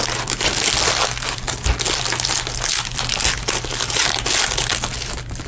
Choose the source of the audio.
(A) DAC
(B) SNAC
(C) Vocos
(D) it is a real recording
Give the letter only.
D